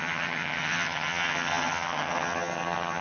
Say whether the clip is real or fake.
fake